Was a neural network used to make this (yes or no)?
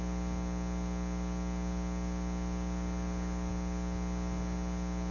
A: no